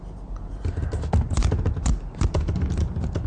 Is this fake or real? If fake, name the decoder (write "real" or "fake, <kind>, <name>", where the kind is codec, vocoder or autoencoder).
real